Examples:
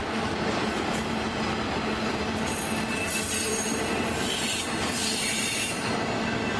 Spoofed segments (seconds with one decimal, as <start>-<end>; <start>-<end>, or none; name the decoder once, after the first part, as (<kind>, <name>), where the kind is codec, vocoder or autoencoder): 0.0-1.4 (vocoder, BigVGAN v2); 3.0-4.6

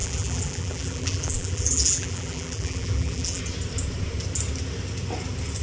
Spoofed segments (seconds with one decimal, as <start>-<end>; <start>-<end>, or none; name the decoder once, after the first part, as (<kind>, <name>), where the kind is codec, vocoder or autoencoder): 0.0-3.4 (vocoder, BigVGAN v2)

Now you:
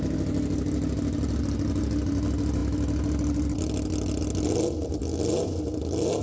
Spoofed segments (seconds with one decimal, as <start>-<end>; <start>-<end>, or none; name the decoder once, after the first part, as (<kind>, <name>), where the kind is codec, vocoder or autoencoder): none

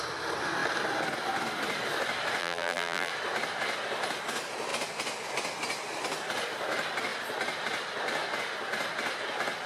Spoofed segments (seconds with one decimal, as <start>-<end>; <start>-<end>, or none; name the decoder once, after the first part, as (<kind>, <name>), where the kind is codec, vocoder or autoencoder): 2.4-3.1 (vocoder, BigVGAN v2)

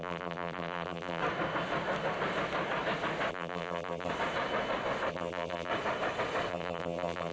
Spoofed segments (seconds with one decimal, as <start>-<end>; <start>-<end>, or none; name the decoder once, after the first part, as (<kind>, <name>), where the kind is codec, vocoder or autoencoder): 0.0-1.2 (vocoder, BigVGAN v2); 3.3-4.1; 5.1-5.7; 6.5-7.3